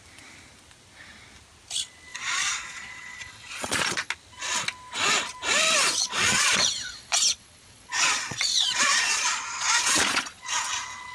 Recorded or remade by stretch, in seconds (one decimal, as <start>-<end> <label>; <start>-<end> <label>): 0.0-2.1 recorded; 2.1-4.1 remade; 4.1-6.0 recorded; 6.0-10.5 remade; 10.5-11.1 recorded